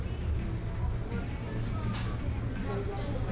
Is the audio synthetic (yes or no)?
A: no